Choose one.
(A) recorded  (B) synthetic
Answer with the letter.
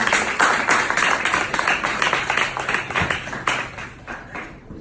A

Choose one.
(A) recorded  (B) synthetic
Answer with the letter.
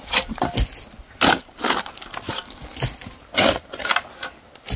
A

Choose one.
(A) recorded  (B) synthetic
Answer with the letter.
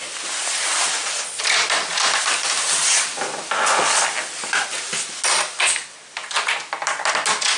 A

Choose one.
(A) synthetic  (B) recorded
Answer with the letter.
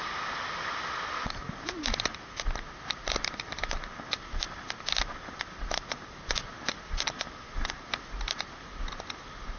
B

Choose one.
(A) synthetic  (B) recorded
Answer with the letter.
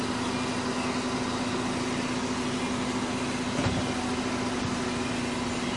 B